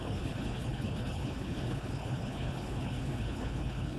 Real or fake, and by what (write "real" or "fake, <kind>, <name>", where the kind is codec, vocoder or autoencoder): fake, codec, HILCodec